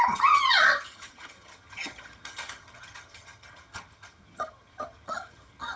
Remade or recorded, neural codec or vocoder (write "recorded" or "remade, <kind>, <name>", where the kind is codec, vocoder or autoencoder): remade, vocoder, HiFi-GAN